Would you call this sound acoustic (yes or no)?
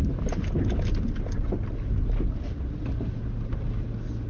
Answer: yes